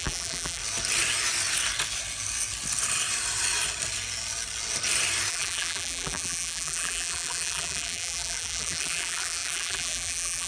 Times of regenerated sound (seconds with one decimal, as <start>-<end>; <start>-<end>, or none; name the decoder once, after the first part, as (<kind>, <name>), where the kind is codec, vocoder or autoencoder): 0.0-0.6 (vocoder, BigVGAN v2); 5.3-10.5